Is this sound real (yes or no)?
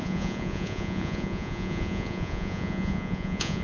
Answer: no